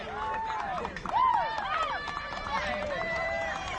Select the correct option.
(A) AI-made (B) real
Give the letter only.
A